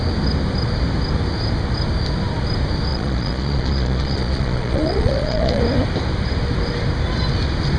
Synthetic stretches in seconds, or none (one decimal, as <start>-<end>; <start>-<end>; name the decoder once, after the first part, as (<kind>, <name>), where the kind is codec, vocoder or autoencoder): 2.9-5.6 (vocoder, Vocos)